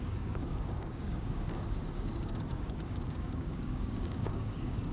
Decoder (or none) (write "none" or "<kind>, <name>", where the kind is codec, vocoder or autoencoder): codec, DAC